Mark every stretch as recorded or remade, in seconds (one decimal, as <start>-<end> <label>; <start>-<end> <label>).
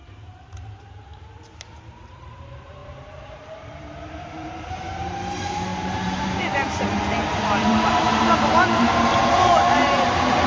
0.0-10.5 remade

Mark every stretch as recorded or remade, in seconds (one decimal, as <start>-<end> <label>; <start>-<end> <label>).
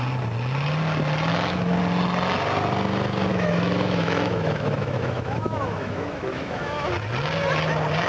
0.0-1.3 recorded; 1.3-1.8 remade; 1.8-3.3 recorded; 3.3-6.9 remade; 6.9-8.1 recorded